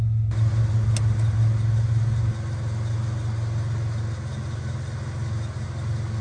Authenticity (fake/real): real